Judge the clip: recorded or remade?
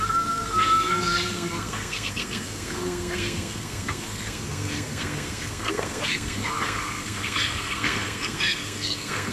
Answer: remade